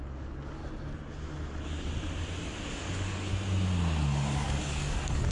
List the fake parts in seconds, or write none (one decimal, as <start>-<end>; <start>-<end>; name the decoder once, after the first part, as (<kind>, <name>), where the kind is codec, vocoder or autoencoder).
0.0-0.6 (codec, DAC); 2.7-3.3; 4.0-5.3